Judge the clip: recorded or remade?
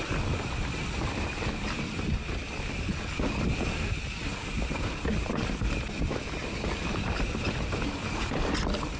recorded